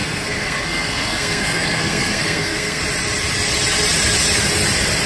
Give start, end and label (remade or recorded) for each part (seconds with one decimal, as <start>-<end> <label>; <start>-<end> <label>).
0.0-2.8 remade; 2.8-5.1 recorded